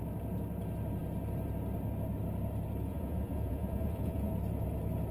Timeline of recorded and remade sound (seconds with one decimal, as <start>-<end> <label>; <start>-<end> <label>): 0.0-2.9 recorded; 2.9-4.3 remade; 4.3-5.1 recorded